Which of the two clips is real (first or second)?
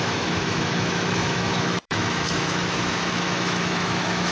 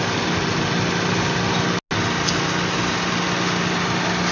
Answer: second